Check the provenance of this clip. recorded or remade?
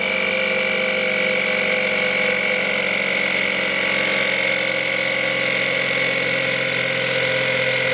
recorded